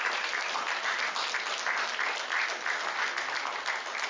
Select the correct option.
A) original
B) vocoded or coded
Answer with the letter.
A